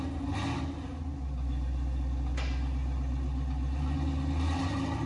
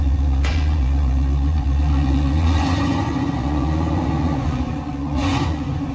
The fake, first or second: second